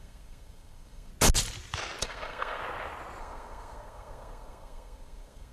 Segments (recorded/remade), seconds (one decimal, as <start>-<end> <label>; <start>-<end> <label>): 0.0-1.1 remade; 1.1-2.0 recorded; 2.0-2.6 remade; 2.6-3.2 recorded; 3.2-5.5 remade